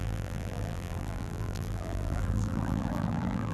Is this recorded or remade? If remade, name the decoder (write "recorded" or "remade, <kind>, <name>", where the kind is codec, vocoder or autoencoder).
remade, vocoder, BigVGAN v2